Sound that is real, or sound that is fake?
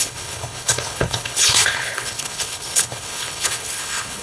fake